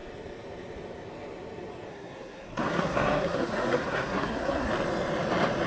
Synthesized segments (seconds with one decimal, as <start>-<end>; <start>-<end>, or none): 1.9-4.7